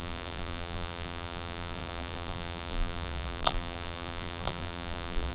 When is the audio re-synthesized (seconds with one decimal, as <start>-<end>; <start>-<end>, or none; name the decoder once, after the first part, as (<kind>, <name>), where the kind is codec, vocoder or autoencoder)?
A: 0.0-5.3 (vocoder, BigVGAN v2)